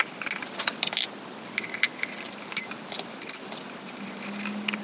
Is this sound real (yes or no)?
yes